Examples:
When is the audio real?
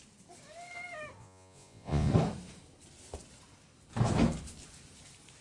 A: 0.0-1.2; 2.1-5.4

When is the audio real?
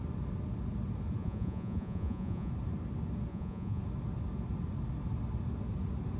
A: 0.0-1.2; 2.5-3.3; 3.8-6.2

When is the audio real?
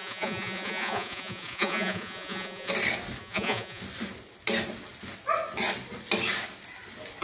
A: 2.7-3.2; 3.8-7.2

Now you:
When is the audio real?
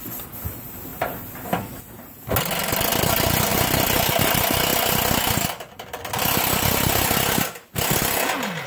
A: 0.0-8.7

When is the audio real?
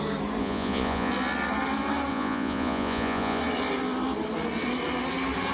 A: 0.0-0.4; 1.1-2.1; 3.4-5.5